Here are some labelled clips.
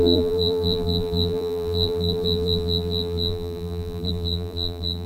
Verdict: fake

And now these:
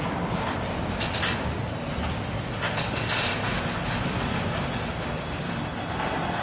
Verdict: real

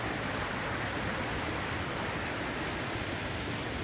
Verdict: real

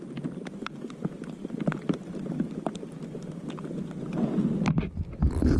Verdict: real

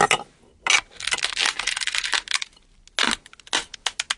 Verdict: real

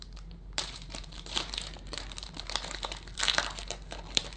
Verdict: fake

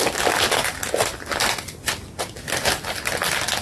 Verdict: real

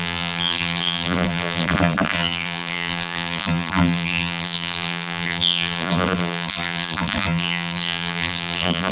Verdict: fake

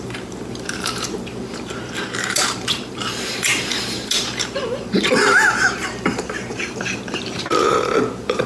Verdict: fake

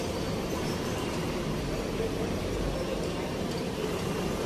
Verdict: fake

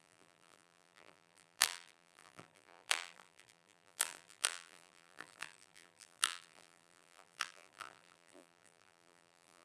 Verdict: fake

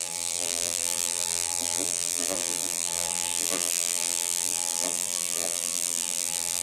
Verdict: fake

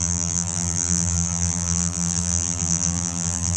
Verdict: fake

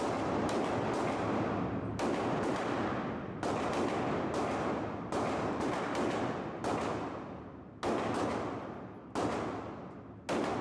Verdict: real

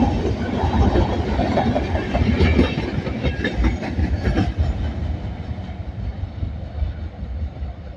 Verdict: real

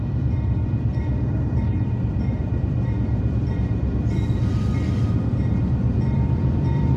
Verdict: fake